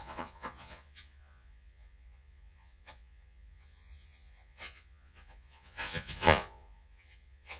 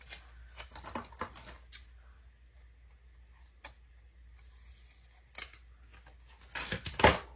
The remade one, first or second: first